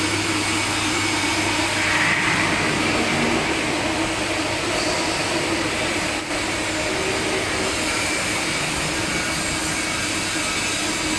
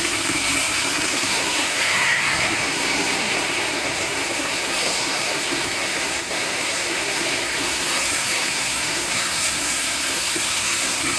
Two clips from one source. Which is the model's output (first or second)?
second